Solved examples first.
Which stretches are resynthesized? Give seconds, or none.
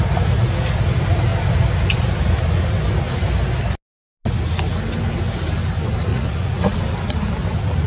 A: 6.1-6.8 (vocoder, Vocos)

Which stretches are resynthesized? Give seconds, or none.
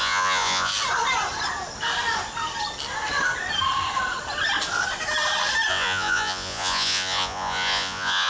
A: 0.0-0.7 (vocoder, Vocos); 5.7-8.3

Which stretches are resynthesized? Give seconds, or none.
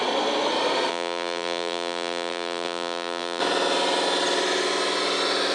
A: 0.9-3.4 (vocoder, BigVGAN v2)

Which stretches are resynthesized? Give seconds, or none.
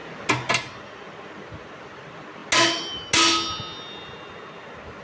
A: none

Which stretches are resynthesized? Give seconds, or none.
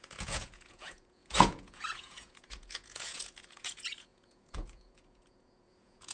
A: 0.0-6.1 (vocoder, Vocos)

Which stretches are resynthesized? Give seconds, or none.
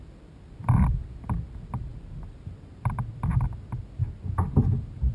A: none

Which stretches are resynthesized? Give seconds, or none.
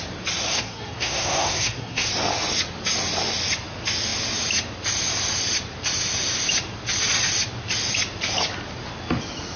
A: 0.5-2.1 (codec, SNAC)